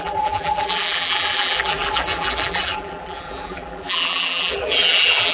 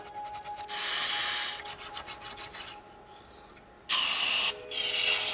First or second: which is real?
second